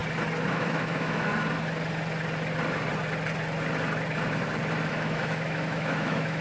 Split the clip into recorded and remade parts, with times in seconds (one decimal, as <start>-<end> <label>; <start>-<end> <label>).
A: 0.0-0.5 recorded; 0.5-1.3 remade; 1.3-4.9 recorded; 4.9-6.4 remade